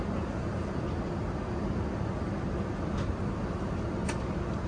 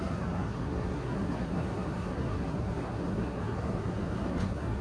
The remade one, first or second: second